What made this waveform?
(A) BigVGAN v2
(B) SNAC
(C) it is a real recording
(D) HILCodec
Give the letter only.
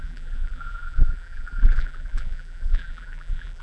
A